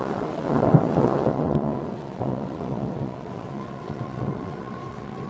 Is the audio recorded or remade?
remade